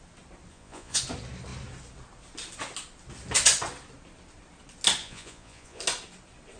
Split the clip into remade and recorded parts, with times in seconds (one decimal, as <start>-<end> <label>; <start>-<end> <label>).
0.0-0.5 recorded; 0.5-1.0 remade; 1.0-5.0 recorded; 5.0-5.8 remade; 5.8-6.6 recorded